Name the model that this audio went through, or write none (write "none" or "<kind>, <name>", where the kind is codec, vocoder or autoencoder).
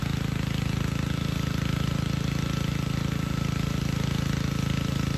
none